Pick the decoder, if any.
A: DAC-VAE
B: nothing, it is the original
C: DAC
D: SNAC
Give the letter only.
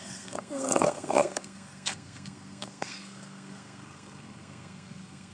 D